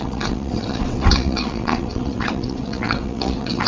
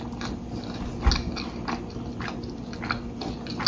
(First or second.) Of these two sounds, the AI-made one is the first